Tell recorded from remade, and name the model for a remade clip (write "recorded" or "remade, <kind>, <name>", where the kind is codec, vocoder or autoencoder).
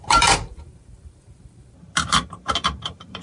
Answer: remade, vocoder, BigVGAN v2